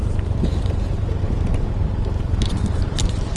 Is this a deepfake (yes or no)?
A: yes